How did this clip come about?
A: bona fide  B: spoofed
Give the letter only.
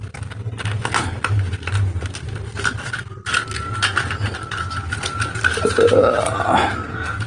A